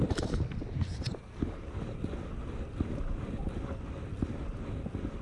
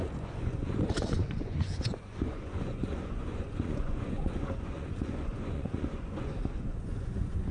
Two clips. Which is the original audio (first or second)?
first